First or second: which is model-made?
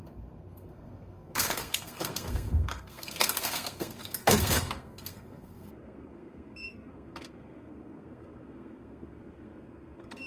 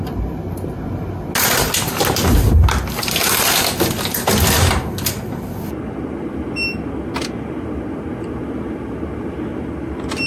first